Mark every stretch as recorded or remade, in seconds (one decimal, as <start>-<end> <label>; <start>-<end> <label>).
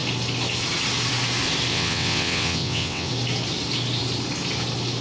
0.0-1.7 recorded; 1.7-3.1 remade; 3.1-5.0 recorded